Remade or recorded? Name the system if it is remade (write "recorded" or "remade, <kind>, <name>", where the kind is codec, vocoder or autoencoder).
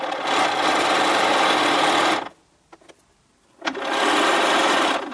recorded